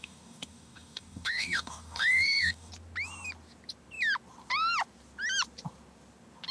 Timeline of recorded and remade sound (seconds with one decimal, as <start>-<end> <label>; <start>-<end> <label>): 0.0-2.7 remade; 2.7-6.5 recorded